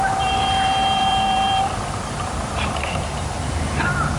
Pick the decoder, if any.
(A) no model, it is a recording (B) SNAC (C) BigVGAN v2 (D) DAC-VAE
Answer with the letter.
C